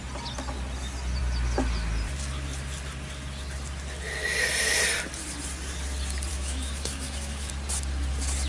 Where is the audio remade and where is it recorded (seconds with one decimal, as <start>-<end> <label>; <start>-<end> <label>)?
0.0-6.3 recorded; 6.3-7.5 remade; 7.5-8.5 recorded